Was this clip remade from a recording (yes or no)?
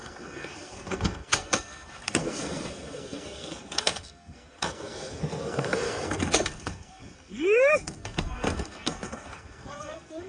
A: yes